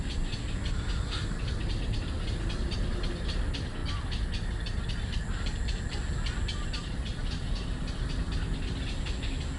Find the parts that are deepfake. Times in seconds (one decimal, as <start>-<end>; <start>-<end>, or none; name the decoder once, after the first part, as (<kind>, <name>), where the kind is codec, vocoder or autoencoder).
none